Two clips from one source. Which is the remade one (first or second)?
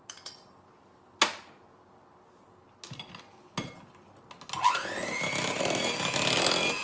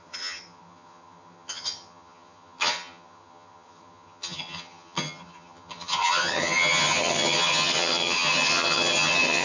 second